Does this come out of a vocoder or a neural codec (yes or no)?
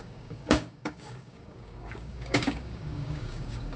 yes